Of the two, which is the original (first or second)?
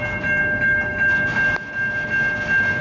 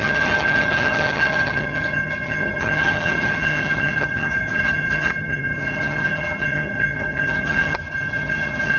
first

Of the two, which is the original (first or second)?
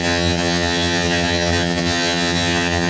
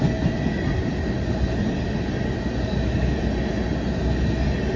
second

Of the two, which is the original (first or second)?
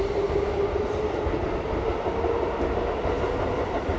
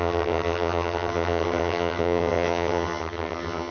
first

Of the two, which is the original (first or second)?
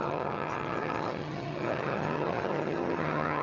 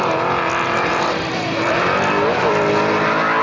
second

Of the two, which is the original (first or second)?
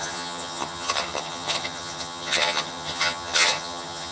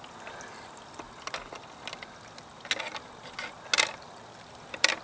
second